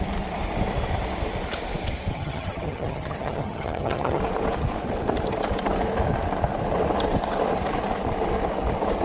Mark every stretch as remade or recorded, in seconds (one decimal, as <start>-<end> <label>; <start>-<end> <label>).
0.0-2.1 recorded; 2.1-4.2 remade; 4.2-9.0 recorded